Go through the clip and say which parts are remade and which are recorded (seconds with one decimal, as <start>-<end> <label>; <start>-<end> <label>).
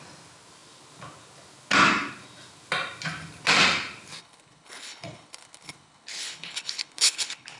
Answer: 0.0-4.2 recorded; 4.2-7.6 remade